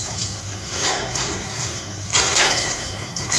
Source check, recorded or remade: remade